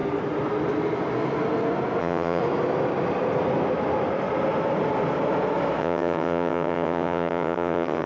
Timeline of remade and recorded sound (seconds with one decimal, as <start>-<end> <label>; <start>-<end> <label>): 0.0-2.0 recorded; 2.0-2.4 remade; 2.4-5.8 recorded; 5.8-8.1 remade